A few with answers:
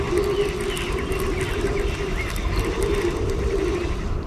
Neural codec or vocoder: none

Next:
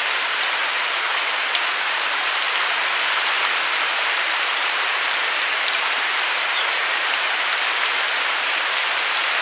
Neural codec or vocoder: vocoder, BigVGAN v2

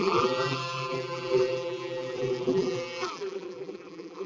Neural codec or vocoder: vocoder, BigVGAN v2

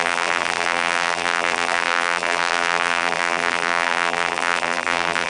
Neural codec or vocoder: vocoder, BigVGAN v2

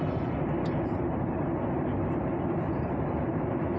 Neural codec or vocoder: vocoder, BigVGAN v2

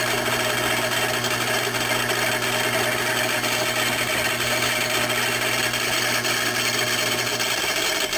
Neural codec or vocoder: vocoder, BigVGAN v2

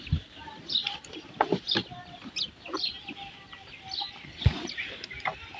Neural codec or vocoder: vocoder, BigVGAN v2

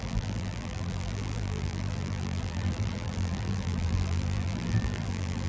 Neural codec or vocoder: vocoder, BigVGAN v2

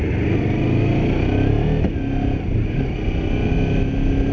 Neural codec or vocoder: none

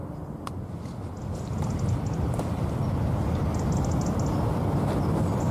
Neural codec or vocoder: none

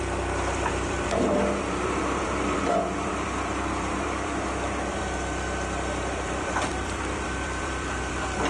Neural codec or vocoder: vocoder, BigVGAN v2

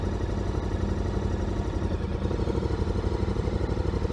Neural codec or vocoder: none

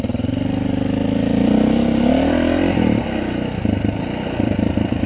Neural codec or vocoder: vocoder, BigVGAN v2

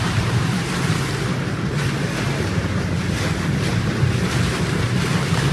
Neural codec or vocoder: vocoder, BigVGAN v2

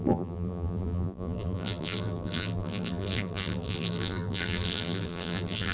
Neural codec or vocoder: vocoder, BigVGAN v2